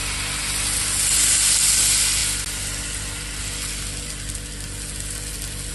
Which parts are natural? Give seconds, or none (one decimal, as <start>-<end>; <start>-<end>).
0.0-5.7